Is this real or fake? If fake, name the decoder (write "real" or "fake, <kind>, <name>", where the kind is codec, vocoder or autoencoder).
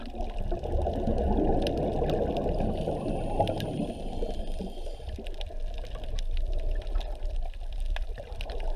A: real